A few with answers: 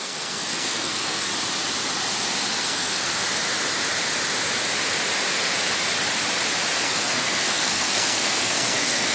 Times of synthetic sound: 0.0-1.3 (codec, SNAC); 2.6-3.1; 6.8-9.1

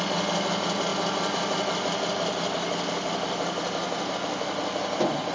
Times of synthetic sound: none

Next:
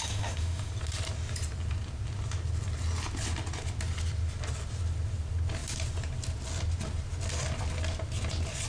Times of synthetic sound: 0.0-0.7 (autoencoder, DAC-VAE)

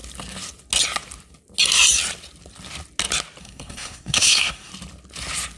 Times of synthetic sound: 3.4-4.7 (codec, SNAC)

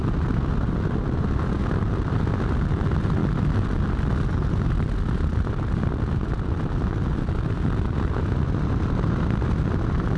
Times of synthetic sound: none